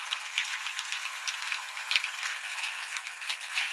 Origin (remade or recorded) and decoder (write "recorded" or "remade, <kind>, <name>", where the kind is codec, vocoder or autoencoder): remade, codec, SNAC